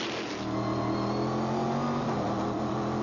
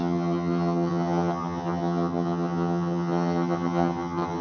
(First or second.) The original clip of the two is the first